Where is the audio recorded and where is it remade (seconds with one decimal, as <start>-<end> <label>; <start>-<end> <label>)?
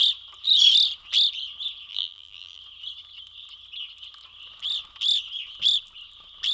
0.0-1.9 recorded; 1.9-2.6 remade; 2.6-6.5 recorded